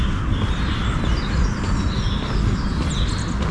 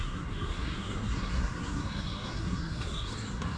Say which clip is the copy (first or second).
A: second